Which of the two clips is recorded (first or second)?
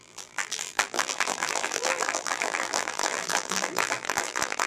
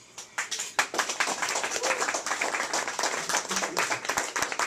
second